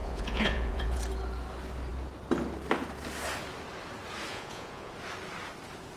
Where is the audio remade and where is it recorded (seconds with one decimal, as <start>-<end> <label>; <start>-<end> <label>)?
0.0-1.0 remade; 1.0-4.3 recorded; 4.3-4.9 remade; 4.9-6.0 recorded